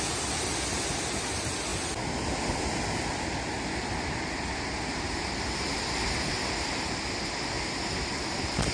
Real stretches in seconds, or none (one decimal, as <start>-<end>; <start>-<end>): 0.0-8.7